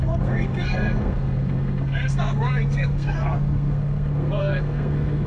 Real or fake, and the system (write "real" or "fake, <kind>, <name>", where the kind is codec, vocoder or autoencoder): fake, codec, SNAC